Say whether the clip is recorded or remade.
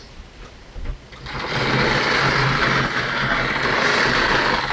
recorded